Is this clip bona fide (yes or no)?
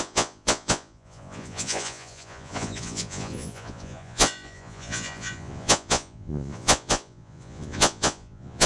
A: no